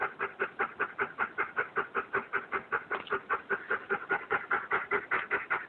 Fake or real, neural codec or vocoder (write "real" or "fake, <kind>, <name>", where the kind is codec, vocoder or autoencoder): real